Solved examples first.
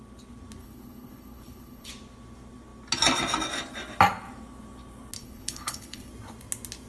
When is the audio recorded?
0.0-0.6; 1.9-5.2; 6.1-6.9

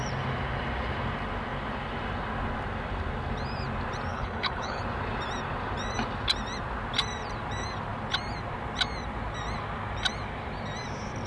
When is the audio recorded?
0.0-4.1; 4.8-11.3

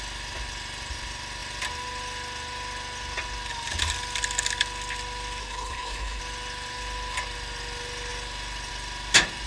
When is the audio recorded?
0.0-5.4; 6.2-9.5

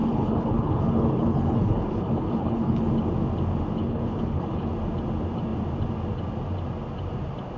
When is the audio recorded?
2.9-3.8; 4.7-7.6

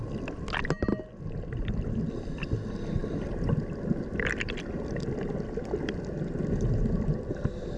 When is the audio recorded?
0.0-7.8

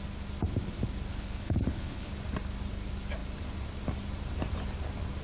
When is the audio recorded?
0.0-1.1; 2.1-5.2

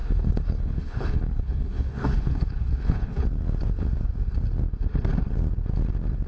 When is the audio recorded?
3.2-6.3